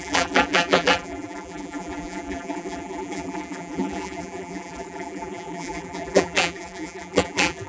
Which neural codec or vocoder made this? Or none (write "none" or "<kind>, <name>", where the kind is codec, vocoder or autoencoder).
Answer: vocoder, BigVGAN v2